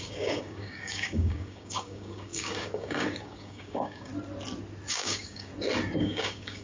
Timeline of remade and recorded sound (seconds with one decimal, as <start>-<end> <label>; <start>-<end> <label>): 0.0-4.1 remade; 4.1-4.9 recorded; 4.9-5.5 remade; 5.5-6.0 recorded; 6.0-6.6 remade